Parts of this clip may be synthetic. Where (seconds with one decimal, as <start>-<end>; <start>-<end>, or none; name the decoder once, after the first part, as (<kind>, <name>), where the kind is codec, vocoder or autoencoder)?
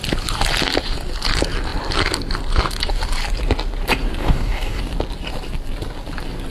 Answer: 4.2-4.8 (codec, DAC)